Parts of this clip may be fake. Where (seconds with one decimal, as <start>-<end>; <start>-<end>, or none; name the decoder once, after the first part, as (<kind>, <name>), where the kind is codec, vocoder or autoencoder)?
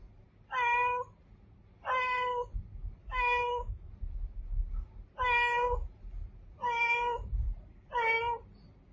3.0-3.9 (autoencoder, DAC-VAE)